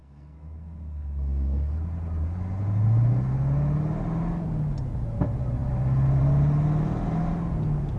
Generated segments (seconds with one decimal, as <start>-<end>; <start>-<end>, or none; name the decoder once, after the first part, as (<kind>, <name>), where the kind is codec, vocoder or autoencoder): 0.0-1.7 (codec, SNAC)